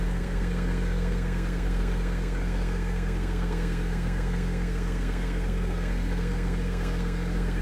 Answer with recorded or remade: remade